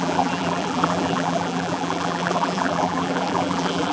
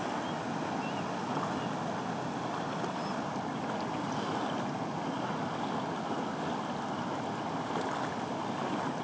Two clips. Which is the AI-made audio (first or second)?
first